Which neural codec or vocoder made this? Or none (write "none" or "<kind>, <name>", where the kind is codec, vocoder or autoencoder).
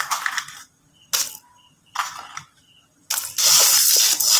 none